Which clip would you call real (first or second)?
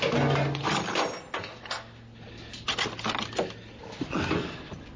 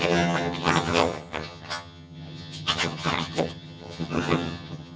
first